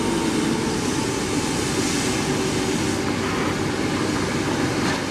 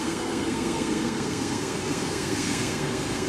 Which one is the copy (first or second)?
second